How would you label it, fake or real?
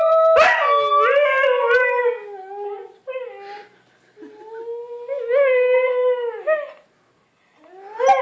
real